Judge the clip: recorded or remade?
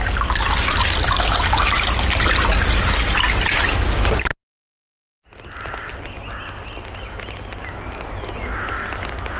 recorded